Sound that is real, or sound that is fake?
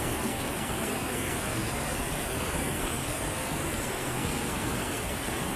fake